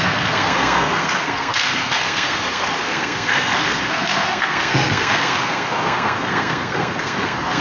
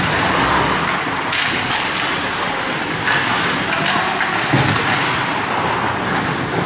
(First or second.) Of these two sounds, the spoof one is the first